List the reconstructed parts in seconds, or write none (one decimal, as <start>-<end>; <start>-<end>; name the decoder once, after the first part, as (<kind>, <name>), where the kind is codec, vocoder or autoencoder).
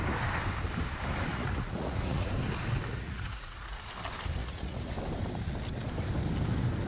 1.3-2.3 (vocoder, Vocos); 2.9-3.8; 4.4-4.9